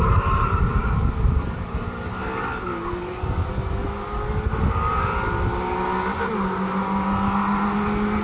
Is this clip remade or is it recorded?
recorded